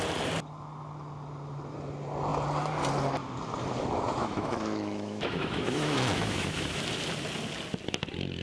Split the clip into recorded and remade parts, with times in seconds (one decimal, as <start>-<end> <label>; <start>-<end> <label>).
0.0-4.2 recorded; 4.2-6.8 remade; 6.8-8.4 recorded